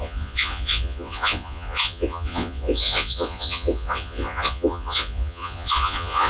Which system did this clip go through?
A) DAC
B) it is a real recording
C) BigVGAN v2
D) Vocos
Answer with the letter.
D